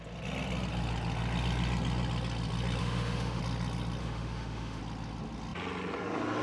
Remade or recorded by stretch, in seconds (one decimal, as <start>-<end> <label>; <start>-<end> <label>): 0.0-2.8 recorded; 2.8-3.4 remade; 3.4-4.0 recorded; 4.0-4.8 remade; 4.8-6.4 recorded